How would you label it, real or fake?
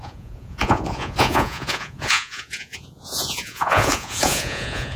fake